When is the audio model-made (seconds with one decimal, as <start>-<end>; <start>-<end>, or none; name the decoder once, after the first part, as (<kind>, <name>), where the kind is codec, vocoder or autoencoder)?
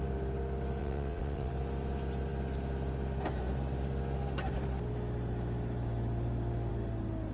0.8-1.5 (vocoder, WaveNeXt)